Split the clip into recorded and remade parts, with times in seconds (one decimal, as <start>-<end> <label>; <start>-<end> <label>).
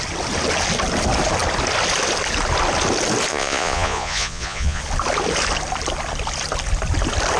0.0-3.3 recorded; 3.3-4.8 remade; 4.8-7.4 recorded